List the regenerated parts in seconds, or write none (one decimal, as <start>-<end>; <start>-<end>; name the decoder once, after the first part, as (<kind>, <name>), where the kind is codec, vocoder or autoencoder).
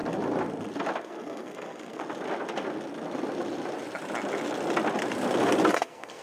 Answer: 1.0-2.0 (codec, SNAC); 5.7-6.2